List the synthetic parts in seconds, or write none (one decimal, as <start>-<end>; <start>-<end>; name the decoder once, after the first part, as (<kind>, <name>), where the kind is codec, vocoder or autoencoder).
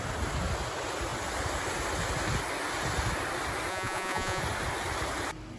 3.7-4.4 (vocoder, Vocos)